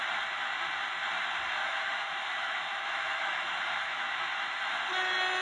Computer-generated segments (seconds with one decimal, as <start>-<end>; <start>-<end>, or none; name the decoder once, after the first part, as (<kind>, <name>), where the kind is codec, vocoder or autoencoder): 1.6-4.8 (autoencoder, DAC-VAE)